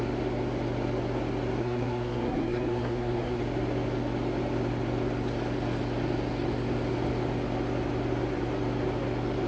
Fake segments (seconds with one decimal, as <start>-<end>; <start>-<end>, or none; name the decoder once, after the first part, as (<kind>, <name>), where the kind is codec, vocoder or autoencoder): 1.6-3.4 (codec, SNAC)